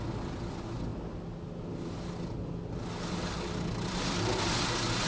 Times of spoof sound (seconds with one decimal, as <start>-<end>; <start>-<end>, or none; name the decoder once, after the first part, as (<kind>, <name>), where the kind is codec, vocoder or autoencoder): none